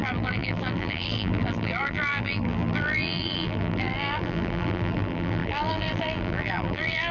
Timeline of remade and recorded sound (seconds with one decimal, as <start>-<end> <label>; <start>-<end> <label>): 0.0-7.1 remade

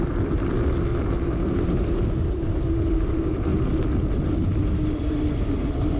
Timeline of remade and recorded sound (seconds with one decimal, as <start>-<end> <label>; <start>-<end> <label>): 0.0-0.9 remade; 0.9-2.3 recorded; 2.3-3.5 remade; 3.5-4.1 recorded; 4.1-6.0 remade

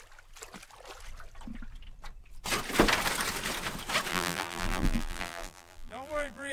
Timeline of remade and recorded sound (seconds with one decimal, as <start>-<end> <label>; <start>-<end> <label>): 0.0-4.1 recorded; 4.1-6.5 remade

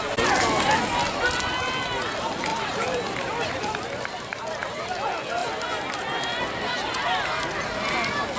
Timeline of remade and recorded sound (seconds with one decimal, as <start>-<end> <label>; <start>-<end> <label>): 0.0-2.5 recorded; 2.5-4.8 remade; 4.8-8.4 recorded

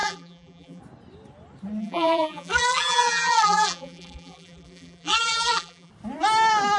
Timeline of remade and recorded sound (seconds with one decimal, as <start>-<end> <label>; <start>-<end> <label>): 0.0-0.8 remade; 0.8-1.8 recorded; 1.8-5.9 remade; 5.9-6.8 recorded

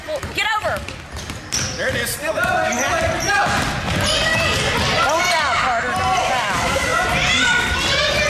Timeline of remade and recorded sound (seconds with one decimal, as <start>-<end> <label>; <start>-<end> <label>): 0.0-4.3 remade; 4.3-6.2 recorded; 6.2-6.9 remade; 6.9-8.3 recorded

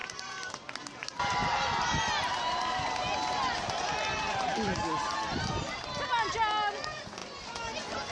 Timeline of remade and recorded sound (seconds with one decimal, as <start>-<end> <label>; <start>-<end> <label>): 0.0-4.3 recorded; 4.3-4.8 remade; 4.8-8.1 recorded

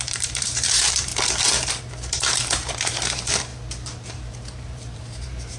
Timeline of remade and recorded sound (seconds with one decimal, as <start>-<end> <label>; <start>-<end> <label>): 0.0-1.1 remade; 1.1-1.9 recorded; 1.9-3.5 remade; 3.5-4.1 recorded; 4.1-5.6 remade